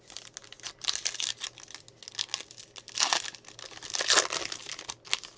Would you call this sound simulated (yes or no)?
no